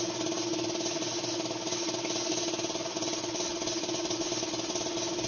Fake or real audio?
real